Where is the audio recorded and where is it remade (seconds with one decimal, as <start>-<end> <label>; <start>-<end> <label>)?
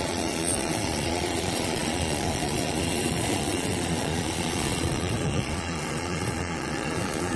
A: 0.0-7.4 remade